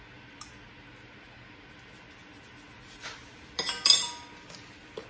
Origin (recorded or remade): recorded